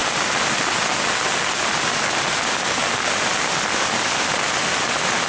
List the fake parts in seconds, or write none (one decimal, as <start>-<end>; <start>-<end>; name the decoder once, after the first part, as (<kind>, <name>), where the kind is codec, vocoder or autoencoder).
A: none